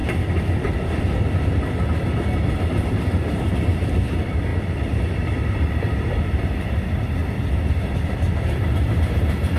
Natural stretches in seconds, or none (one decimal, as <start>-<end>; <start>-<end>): 0.0-2.8; 7.2-7.7